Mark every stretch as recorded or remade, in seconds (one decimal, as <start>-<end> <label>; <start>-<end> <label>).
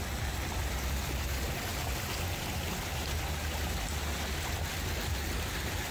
0.0-5.9 recorded